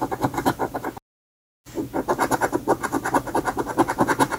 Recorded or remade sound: recorded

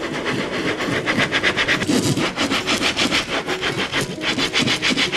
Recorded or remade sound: recorded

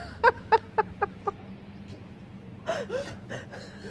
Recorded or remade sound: recorded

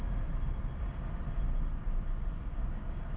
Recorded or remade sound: recorded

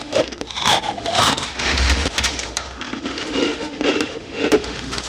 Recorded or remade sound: remade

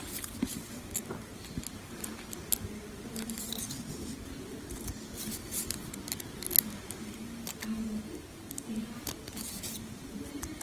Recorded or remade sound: recorded